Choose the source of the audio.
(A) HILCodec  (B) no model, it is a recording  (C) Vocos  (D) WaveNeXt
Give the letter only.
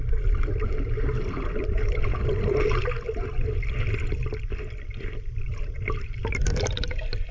B